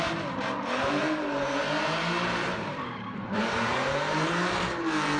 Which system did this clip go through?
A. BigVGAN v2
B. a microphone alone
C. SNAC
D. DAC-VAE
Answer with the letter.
A